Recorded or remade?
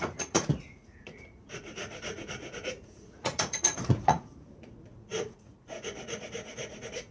remade